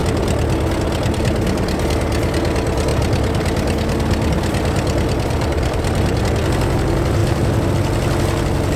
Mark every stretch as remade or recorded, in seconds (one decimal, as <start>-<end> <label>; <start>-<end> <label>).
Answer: 0.0-2.9 recorded; 2.9-6.2 remade; 6.2-7.2 recorded; 7.2-7.7 remade; 7.7-8.8 recorded